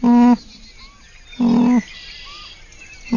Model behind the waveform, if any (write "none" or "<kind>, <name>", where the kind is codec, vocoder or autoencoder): none